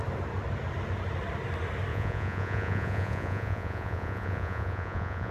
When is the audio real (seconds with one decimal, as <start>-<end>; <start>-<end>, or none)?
0.0-1.9